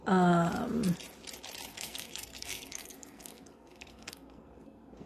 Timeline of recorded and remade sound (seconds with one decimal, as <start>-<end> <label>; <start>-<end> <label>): 0.0-1.7 recorded; 1.7-5.1 remade